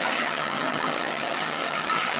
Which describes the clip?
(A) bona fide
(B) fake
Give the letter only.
B